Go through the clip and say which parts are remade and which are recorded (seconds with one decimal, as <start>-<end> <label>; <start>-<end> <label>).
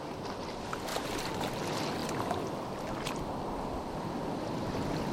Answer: 0.0-0.9 recorded; 0.9-1.5 remade; 1.5-5.1 recorded